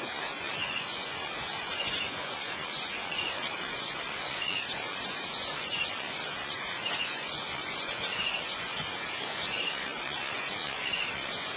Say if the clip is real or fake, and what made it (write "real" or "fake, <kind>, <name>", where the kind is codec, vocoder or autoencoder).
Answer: fake, vocoder, Vocos